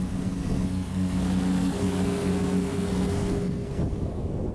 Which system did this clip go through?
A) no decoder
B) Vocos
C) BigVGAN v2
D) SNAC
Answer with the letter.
D